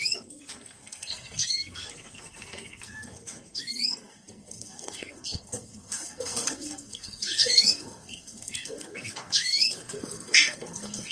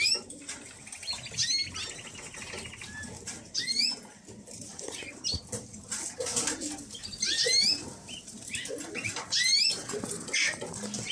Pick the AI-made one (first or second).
first